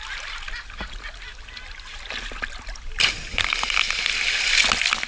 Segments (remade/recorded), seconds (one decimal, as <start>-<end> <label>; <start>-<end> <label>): 0.0-5.1 recorded